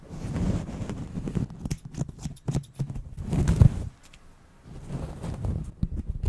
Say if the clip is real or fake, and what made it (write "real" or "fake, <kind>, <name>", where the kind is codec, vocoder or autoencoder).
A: real